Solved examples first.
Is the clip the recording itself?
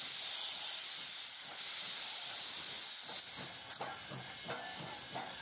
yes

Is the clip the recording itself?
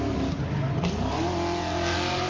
yes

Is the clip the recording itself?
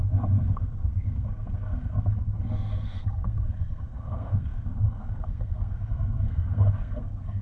no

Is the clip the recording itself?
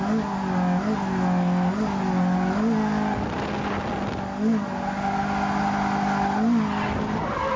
yes